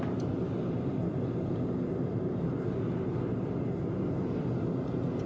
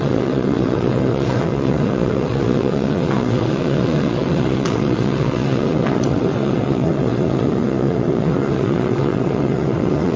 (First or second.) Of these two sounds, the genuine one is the first